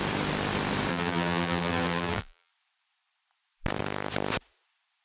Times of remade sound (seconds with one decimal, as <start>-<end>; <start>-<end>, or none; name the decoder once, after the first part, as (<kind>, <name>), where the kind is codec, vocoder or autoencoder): 0.9-2.5 (vocoder, BigVGAN v2)